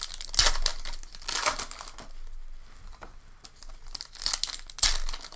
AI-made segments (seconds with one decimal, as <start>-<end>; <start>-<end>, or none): none